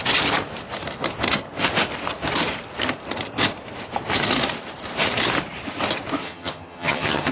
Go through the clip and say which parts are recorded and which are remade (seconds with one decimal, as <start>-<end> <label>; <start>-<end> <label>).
0.0-6.2 recorded; 6.2-7.3 remade